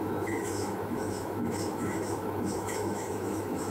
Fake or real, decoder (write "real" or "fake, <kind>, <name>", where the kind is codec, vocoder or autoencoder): fake, autoencoder, DAC-VAE